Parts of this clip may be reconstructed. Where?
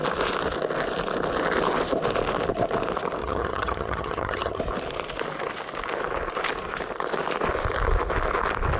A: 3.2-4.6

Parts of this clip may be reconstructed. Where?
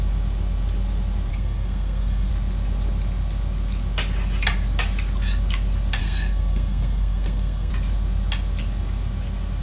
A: 1.3-2.3; 6.0-7.7